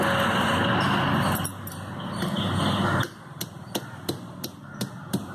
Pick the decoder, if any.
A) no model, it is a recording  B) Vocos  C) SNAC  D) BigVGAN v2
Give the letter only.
A